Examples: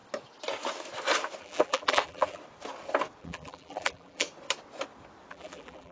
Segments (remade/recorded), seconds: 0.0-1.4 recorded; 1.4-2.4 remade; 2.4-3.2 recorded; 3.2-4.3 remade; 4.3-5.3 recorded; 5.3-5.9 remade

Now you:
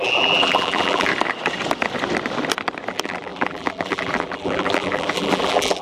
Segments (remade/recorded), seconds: 0.0-1.1 remade; 1.1-2.9 recorded; 2.9-5.8 remade

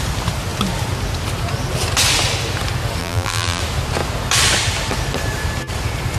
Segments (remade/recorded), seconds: 0.0-3.0 recorded; 3.0-3.6 remade; 3.6-6.2 recorded

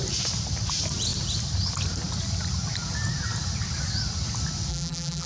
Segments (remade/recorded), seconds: 0.0-4.7 recorded; 4.7-5.3 remade

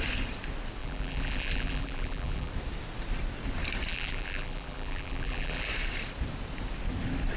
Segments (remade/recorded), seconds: 0.0-0.8 recorded; 0.8-2.5 remade; 2.5-3.9 recorded; 3.9-5.7 remade; 5.7-7.4 recorded

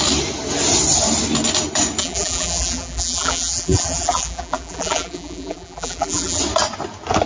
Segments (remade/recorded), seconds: 0.0-2.0 recorded; 2.0-6.4 remade; 6.4-7.3 recorded